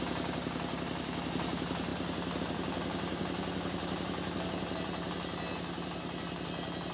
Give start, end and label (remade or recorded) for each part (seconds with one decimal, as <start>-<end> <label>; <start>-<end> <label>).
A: 0.0-6.9 recorded